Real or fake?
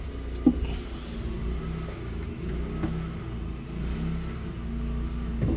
real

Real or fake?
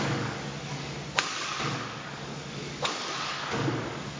fake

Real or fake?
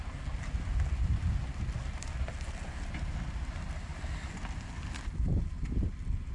real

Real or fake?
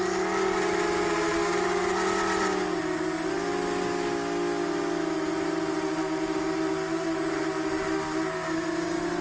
real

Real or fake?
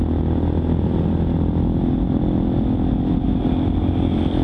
real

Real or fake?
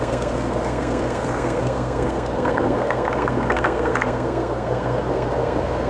fake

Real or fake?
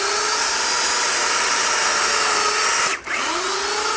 real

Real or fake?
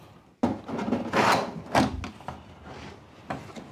real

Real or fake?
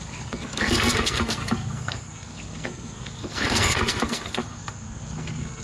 fake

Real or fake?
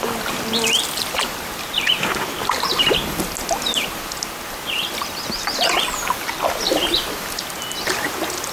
real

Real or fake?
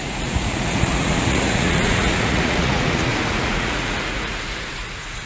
fake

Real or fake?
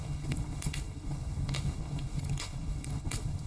fake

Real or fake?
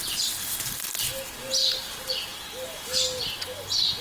real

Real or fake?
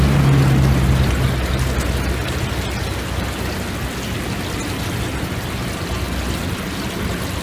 real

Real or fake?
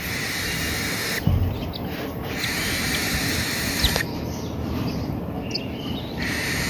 fake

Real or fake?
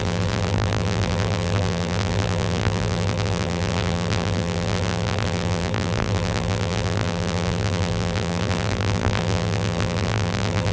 fake